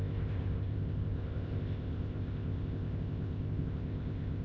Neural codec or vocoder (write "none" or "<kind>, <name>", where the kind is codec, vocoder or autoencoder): codec, ZipCodec